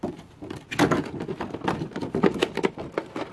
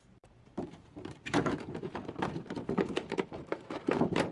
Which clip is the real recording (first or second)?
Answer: first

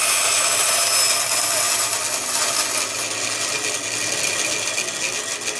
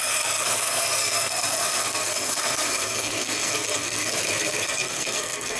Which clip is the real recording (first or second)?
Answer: first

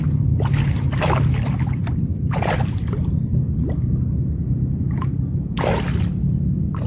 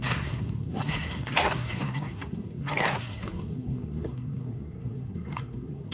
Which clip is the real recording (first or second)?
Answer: first